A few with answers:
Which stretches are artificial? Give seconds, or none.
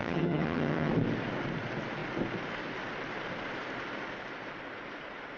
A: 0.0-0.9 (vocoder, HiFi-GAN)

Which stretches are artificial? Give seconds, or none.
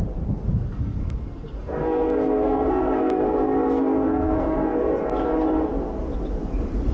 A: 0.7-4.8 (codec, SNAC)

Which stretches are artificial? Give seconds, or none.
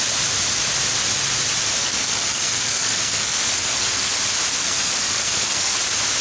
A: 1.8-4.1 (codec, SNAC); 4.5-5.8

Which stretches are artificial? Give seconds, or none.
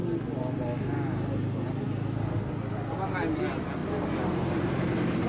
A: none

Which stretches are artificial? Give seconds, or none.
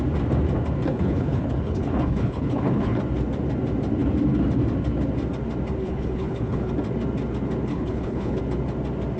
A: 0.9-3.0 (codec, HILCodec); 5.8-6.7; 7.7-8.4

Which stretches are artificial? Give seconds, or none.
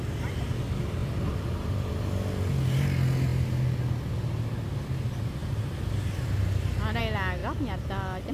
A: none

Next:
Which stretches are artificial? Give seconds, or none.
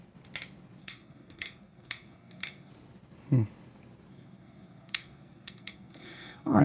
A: 0.8-2.7 (codec, SNAC); 4.1-6.6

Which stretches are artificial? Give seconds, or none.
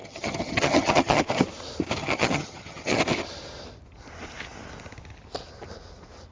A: 0.0-1.2 (vocoder, HiFi-GAN); 2.0-3.0